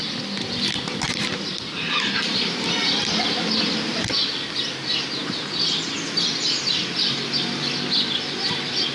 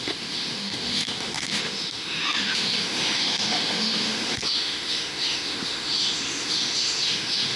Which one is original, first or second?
first